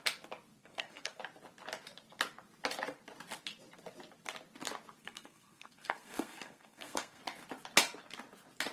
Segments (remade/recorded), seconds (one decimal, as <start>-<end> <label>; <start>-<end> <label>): 0.0-0.6 recorded; 0.6-1.2 remade; 1.2-5.0 recorded; 5.0-7.2 remade; 7.2-8.7 recorded